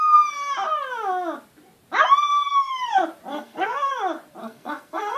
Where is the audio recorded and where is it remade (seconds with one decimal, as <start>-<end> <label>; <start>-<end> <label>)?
0.0-2.3 recorded; 2.3-2.9 remade; 2.9-3.3 recorded; 3.3-3.9 remade; 3.9-4.4 recorded; 4.4-5.2 remade